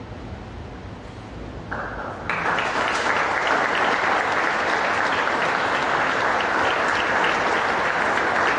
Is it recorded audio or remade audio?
recorded